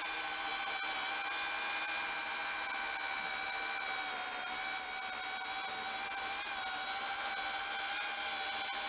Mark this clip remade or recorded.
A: recorded